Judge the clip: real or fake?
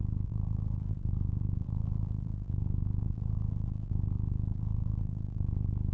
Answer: fake